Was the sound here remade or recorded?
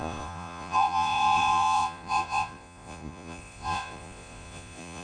remade